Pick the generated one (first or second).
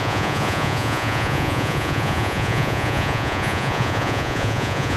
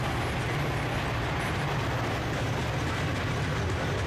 first